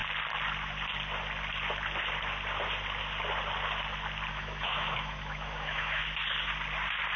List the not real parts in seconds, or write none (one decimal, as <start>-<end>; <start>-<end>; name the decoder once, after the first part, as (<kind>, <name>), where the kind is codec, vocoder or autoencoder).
4.3-6.0 (autoencoder, DAC-VAE)